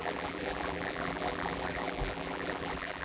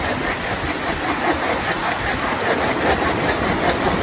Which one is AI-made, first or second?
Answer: first